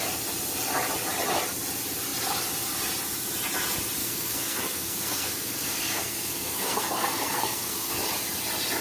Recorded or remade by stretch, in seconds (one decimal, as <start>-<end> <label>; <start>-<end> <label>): 0.0-4.0 recorded; 4.0-7.9 remade; 7.9-8.8 recorded